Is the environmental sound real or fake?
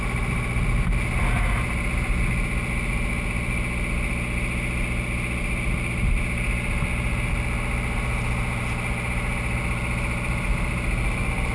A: real